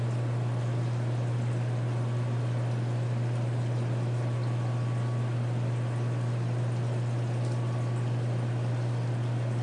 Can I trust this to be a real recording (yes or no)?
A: yes